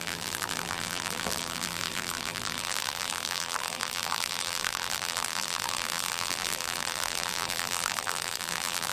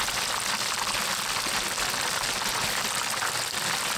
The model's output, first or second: first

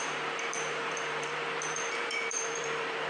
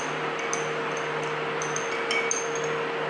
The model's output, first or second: first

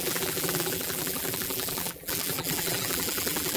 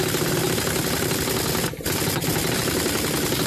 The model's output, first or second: first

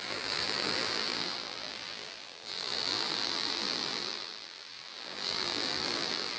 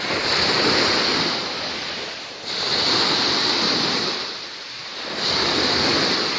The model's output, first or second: first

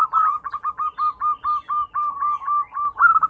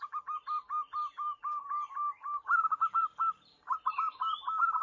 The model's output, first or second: second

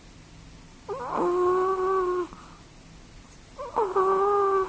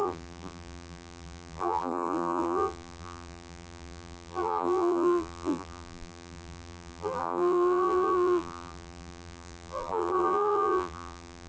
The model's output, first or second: second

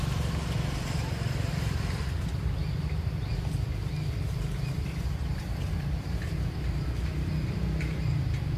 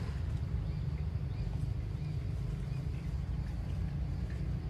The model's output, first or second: first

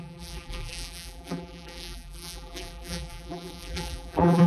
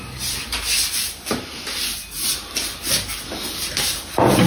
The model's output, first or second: first